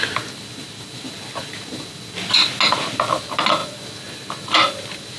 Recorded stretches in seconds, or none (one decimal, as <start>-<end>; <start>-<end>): 0.0-5.2